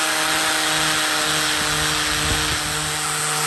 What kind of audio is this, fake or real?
real